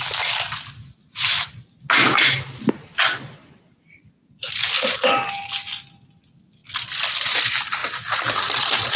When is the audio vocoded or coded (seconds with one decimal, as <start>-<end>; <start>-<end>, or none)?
none